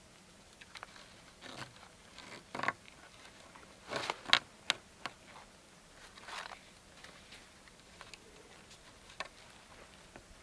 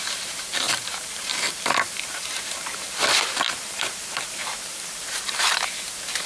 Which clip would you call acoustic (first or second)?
first